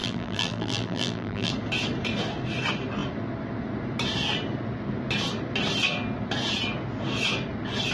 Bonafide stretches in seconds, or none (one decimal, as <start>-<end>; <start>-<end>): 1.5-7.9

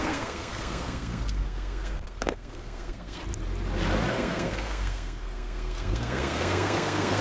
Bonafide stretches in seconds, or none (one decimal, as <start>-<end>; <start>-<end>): 3.2-4.1

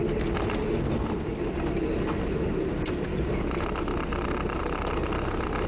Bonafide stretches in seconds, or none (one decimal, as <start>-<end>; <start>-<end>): 0.0-5.7

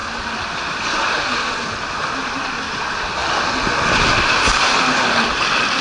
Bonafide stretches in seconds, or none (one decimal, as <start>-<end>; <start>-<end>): 0.0-5.8

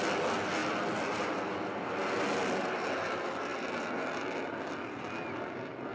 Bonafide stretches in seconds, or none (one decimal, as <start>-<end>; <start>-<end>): 0.0-5.9

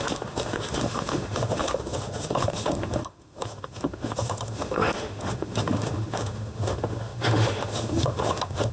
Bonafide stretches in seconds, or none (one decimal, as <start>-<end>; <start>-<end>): none

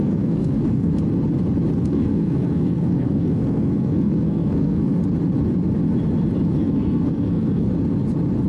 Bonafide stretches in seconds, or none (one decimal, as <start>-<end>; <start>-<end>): 0.9-1.8; 5.0-6.6; 7.7-8.5